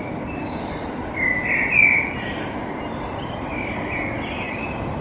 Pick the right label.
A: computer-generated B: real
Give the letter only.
B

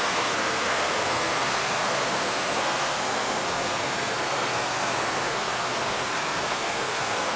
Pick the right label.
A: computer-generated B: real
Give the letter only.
A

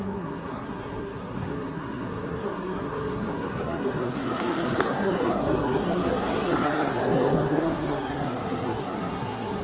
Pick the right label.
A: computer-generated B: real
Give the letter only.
A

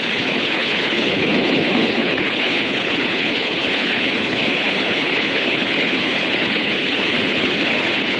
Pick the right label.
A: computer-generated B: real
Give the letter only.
A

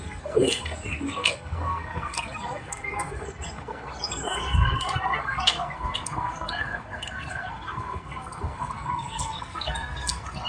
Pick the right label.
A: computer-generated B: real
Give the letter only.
A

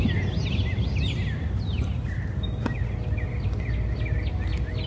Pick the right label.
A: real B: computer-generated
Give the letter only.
A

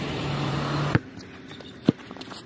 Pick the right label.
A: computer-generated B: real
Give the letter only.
A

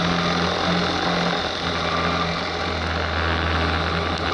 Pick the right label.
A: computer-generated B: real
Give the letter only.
B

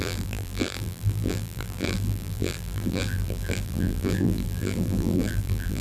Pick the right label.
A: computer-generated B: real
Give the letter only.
A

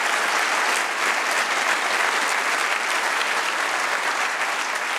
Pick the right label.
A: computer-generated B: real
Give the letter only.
B